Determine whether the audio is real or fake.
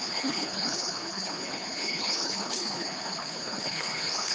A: fake